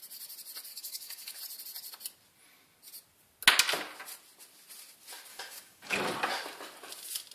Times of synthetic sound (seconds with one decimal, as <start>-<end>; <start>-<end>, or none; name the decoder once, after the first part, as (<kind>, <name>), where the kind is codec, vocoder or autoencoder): 0.7-1.4 (codec, DAC); 5.3-5.9